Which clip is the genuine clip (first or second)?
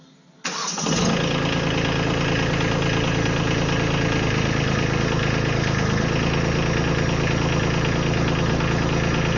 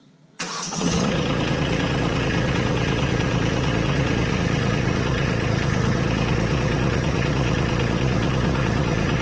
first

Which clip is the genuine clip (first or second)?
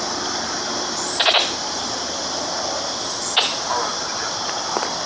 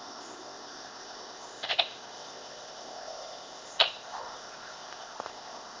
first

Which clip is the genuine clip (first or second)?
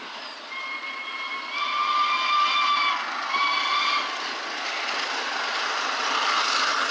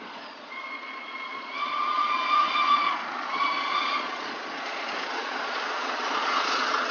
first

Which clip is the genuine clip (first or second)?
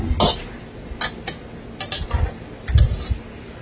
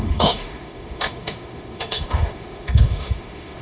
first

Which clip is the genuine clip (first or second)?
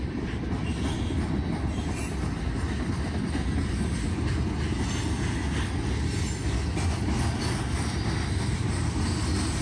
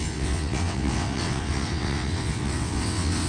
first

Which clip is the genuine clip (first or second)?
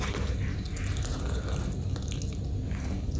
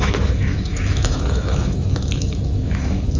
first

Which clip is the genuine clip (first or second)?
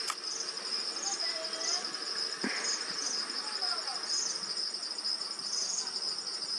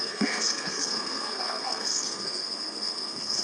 first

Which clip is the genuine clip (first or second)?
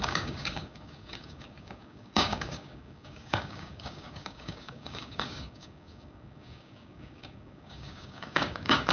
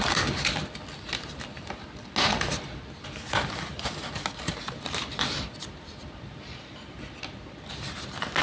second